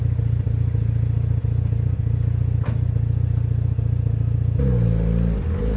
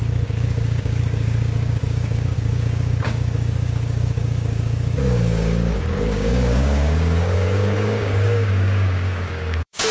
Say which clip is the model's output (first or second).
second